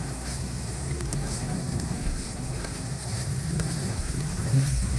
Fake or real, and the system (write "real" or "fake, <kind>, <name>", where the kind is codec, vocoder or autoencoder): fake, codec, SNAC